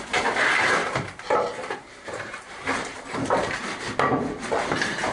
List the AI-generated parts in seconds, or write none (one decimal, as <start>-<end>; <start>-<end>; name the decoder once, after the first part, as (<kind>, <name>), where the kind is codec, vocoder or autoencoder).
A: 0.8-3.9 (vocoder, BigVGAN v2)